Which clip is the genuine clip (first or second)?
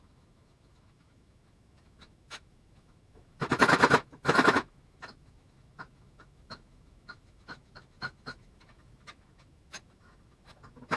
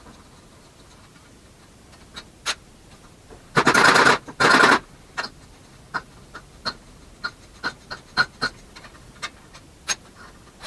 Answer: second